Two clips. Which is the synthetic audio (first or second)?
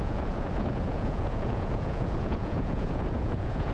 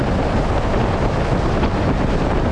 first